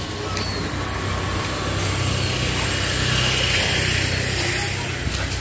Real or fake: real